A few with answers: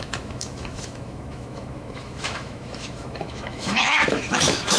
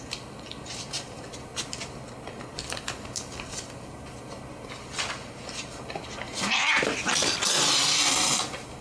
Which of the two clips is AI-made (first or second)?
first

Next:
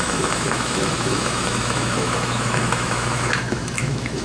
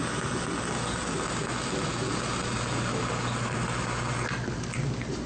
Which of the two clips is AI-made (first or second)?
first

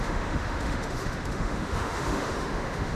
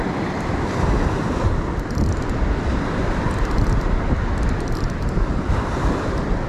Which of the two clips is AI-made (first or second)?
first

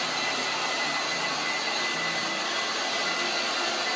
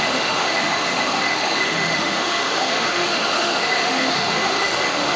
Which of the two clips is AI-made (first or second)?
second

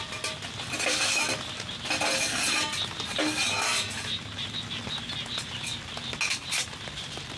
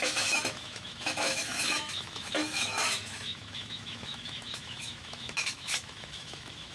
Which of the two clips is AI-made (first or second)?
second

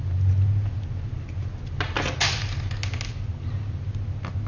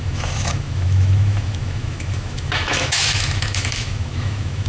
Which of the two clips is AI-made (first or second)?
second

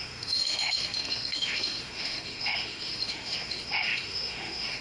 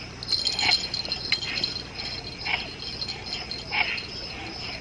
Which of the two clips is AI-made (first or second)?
first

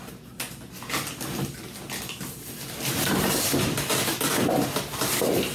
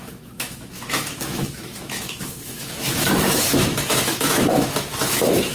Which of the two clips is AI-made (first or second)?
second